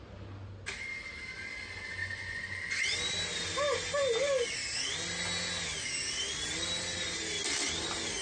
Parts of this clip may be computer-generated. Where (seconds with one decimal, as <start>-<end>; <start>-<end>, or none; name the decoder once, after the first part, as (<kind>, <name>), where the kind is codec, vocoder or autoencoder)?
2.0-2.6 (vocoder, Vocos)